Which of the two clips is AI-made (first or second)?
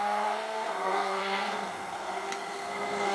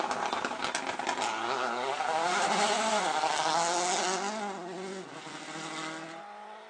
first